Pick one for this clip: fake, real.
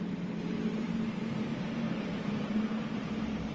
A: fake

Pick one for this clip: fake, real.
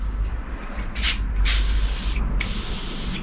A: fake